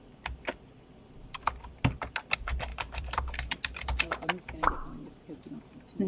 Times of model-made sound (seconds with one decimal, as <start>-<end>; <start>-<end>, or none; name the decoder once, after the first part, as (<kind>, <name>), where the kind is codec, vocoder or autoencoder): 1.2-1.8 (vocoder, BigVGAN v2); 2.7-6.1